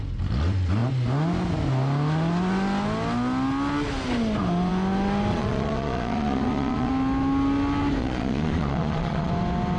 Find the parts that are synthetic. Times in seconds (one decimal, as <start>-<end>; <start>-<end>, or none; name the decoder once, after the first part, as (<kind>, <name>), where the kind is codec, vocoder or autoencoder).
5.3-6.9 (vocoder, Vocos); 8.0-9.3